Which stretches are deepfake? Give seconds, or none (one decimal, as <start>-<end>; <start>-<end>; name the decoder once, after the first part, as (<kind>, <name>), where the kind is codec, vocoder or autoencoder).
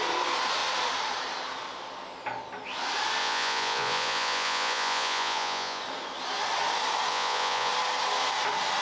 3.2-5.8 (vocoder, Vocos); 7.1-7.7